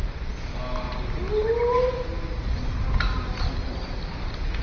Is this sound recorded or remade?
recorded